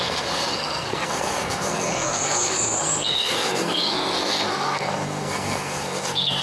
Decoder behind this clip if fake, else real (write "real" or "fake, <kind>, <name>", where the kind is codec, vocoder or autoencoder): fake, codec, SNAC